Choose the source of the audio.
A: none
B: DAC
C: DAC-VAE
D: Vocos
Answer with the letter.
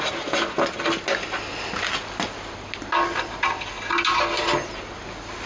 A